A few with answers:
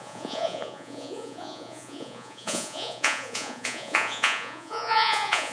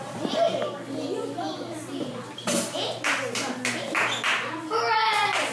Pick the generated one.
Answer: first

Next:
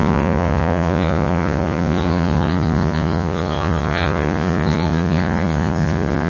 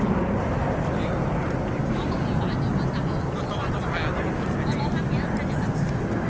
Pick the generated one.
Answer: first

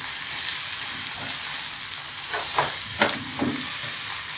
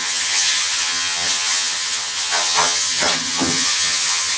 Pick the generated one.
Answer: second